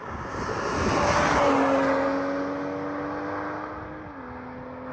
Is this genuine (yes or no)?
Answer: yes